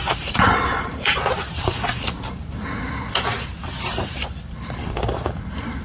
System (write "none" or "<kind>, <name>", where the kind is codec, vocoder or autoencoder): vocoder, BigVGAN v2